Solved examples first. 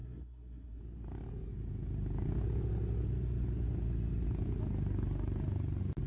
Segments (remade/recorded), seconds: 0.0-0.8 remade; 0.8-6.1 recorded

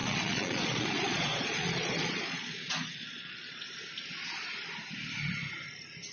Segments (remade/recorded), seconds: 0.0-3.7 remade; 3.7-6.1 recorded

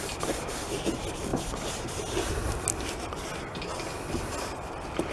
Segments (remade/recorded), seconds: 0.0-5.1 recorded

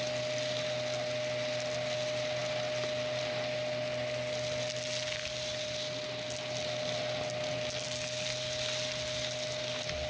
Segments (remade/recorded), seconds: 0.0-10.1 recorded

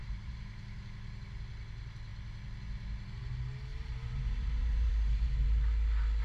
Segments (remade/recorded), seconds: 0.0-0.7 remade; 0.7-3.7 recorded; 3.7-4.9 remade; 4.9-6.2 recorded

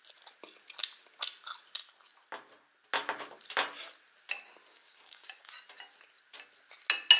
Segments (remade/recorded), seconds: 0.0-4.7 recorded; 4.7-5.5 remade; 5.5-7.2 recorded

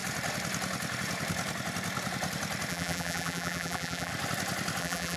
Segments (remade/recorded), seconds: 0.0-2.7 recorded; 2.7-4.1 remade; 4.1-4.8 recorded; 4.8-5.2 remade

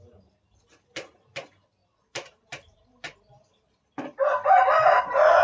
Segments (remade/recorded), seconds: 0.0-1.8 recorded; 1.8-5.0 remade; 5.0-5.4 recorded